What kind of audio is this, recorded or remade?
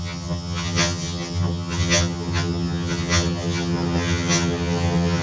remade